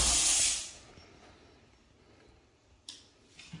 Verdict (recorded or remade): recorded